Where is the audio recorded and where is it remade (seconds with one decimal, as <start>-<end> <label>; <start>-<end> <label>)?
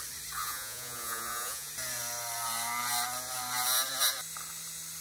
0.0-0.4 recorded; 0.4-1.7 remade; 1.7-5.0 recorded